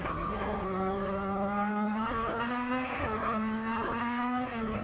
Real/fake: fake